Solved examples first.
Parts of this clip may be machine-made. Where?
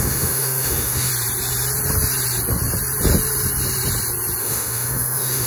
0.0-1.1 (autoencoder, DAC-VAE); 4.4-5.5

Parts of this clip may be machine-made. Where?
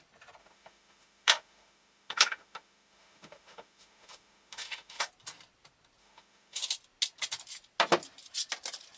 0.4-5.1 (autoencoder, DAC-VAE); 6.0-6.6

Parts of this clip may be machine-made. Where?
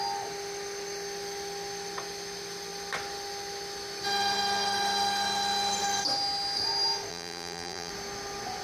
7.1-7.9 (vocoder, BigVGAN v2)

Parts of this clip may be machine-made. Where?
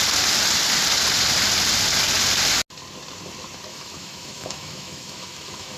3.7-5.8 (autoencoder, DAC-VAE)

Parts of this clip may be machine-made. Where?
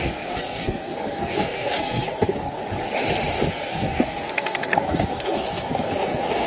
0.0-2.6 (codec, SNAC); 3.5-6.5